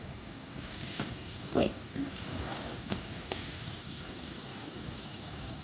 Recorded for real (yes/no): no